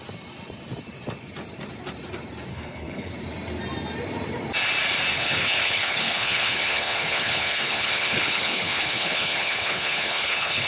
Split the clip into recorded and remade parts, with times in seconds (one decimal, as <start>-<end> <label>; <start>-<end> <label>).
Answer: 0.0-2.5 recorded; 2.5-3.1 remade; 3.1-5.1 recorded; 5.1-10.7 remade